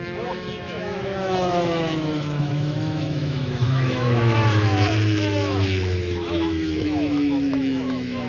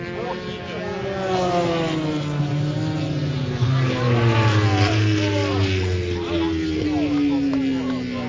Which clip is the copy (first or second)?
first